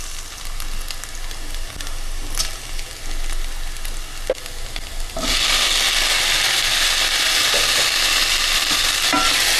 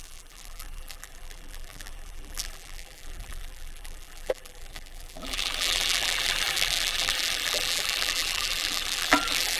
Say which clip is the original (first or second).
first